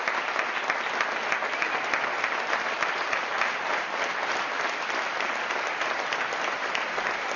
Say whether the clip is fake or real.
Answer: real